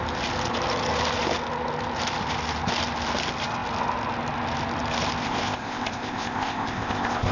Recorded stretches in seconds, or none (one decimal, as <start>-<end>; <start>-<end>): 0.0-5.2